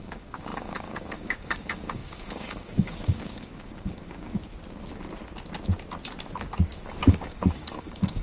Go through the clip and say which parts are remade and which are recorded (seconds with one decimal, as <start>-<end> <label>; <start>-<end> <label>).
0.0-4.5 remade; 4.5-7.1 recorded; 7.1-8.2 remade